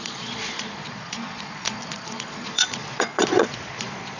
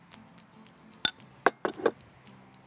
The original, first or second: second